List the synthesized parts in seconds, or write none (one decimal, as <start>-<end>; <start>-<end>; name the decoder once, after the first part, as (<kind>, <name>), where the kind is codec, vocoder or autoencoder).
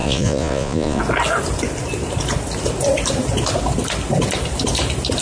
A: 0.0-1.0 (vocoder, Vocos)